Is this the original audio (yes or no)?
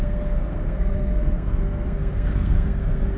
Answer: no